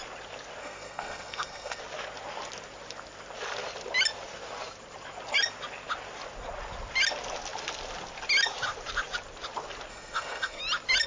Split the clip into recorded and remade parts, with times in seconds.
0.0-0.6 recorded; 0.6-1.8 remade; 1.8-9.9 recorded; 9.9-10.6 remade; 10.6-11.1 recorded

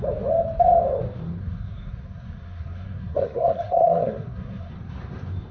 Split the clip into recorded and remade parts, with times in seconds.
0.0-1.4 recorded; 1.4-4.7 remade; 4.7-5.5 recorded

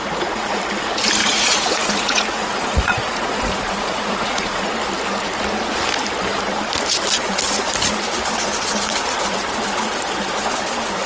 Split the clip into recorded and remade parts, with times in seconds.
0.0-0.6 remade; 0.6-1.2 recorded; 1.2-4.6 remade; 4.6-11.1 recorded

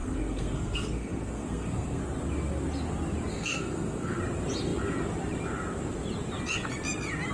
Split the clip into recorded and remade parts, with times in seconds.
0.0-2.0 remade; 2.0-3.3 recorded; 3.3-4.2 remade; 4.2-7.3 recorded

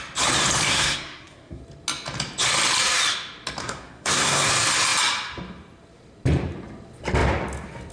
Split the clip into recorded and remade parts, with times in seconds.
0.0-0.7 recorded; 0.7-1.6 remade; 1.6-3.6 recorded; 3.6-4.5 remade; 4.5-7.9 recorded